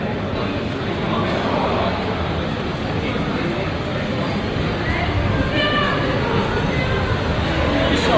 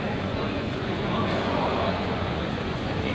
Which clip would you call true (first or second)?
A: first